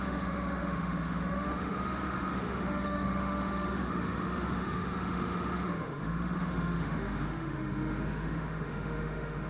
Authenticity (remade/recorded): remade